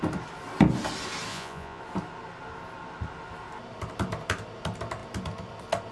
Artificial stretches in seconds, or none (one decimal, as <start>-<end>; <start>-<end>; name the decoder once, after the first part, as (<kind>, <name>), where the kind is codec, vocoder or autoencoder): 1.3-1.8 (vocoder, Vocos)